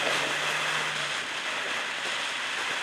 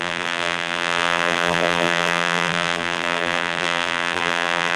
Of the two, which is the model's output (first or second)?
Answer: second